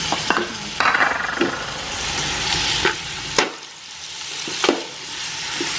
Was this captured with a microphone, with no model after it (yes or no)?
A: yes